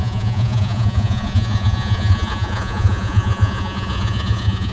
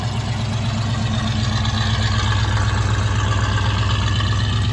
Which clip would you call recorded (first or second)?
second